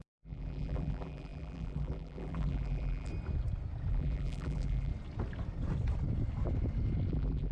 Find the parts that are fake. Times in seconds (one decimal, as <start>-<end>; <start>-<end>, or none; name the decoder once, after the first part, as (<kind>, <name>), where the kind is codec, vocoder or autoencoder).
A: 0.0-3.1 (vocoder, BigVGAN v2); 3.9-4.9; 7.1-7.5